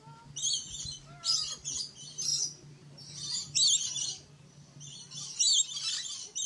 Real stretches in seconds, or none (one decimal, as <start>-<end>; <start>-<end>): 0.0-6.5